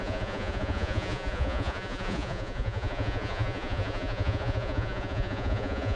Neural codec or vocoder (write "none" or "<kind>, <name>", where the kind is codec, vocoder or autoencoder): vocoder, Vocos